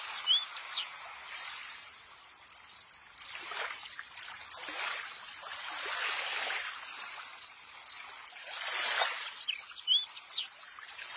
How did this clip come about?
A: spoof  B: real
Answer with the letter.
B